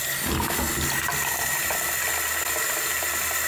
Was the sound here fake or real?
real